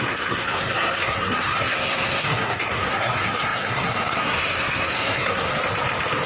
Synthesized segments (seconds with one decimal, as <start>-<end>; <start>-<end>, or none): 0.0-5.5